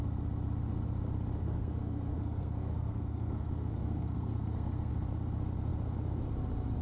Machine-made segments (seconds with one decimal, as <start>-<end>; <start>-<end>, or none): 1.4-4.9